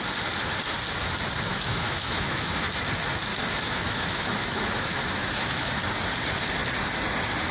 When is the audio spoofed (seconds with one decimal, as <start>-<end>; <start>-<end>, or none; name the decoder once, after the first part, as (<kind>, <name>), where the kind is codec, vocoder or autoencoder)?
1.5-2.7 (autoencoder, DAC-VAE); 3.3-5.8